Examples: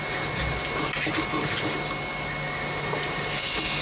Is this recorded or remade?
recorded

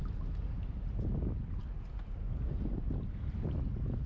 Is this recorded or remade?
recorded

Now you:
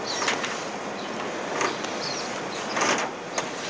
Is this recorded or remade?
recorded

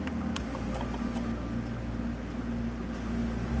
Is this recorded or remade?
recorded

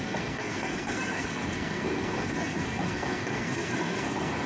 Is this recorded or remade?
remade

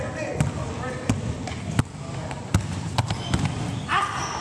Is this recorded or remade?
recorded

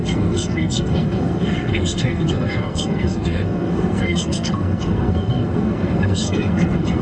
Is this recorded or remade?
remade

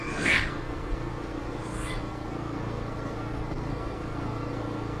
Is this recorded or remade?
remade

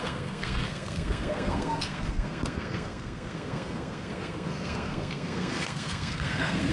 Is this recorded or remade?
remade